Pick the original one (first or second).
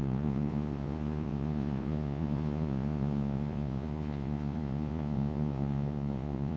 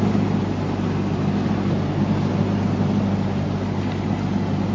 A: second